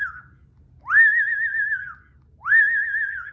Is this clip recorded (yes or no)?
yes